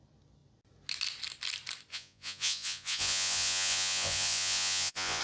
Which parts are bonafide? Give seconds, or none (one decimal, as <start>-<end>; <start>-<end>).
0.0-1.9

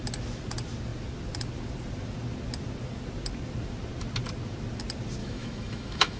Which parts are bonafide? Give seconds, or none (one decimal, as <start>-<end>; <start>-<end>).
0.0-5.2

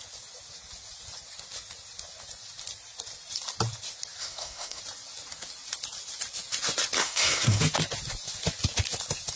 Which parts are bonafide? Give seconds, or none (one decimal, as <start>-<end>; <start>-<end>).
0.0-4.2; 4.8-7.0; 7.6-9.4